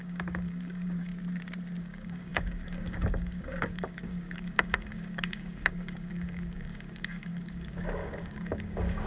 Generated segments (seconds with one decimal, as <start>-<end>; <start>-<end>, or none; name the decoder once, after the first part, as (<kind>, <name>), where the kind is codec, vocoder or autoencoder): 0.0-1.1 (codec, DAC); 1.8-9.1